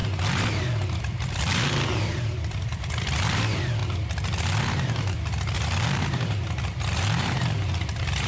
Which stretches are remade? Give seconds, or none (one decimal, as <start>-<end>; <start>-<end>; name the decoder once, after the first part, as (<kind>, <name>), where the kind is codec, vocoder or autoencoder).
1.0-8.3 (vocoder, BigVGAN v2)